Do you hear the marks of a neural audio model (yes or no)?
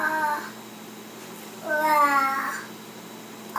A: no